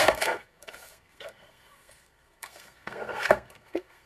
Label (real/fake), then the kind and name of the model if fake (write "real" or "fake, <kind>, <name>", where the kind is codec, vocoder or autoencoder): fake, codec, SNAC